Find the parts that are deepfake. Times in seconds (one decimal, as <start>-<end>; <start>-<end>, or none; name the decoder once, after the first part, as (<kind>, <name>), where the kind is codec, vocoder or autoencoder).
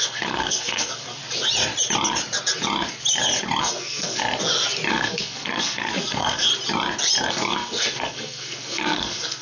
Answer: 0.0-1.2 (codec, SNAC); 3.6-4.2; 4.9-6.5; 7.3-9.4